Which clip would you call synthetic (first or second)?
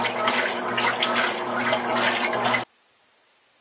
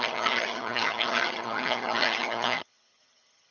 second